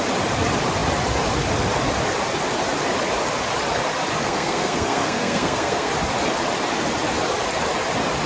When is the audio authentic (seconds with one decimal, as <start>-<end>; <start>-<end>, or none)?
0.0-4.2; 5.9-8.3